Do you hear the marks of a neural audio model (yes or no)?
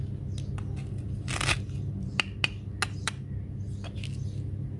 no